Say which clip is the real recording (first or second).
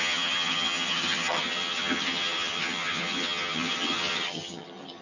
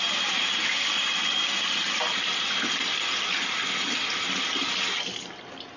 second